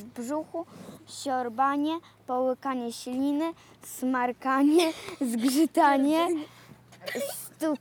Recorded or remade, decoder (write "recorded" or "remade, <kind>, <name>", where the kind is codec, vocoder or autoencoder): recorded